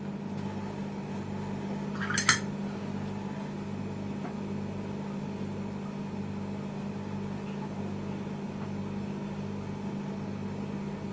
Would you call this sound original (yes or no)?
yes